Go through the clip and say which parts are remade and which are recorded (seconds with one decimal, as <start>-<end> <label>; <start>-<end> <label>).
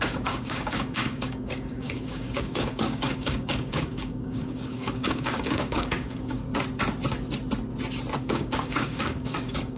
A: 0.0-6.5 remade; 6.5-8.2 recorded; 8.2-9.8 remade